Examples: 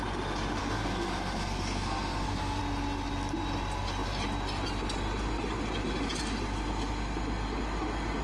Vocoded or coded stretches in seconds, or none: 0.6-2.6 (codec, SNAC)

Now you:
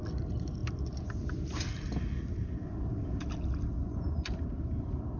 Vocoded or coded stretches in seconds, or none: none

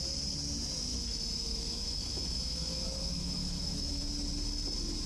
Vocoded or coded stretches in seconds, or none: 0.9-4.0 (autoencoder, DAC-VAE)